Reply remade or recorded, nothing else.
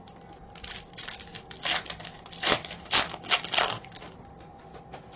recorded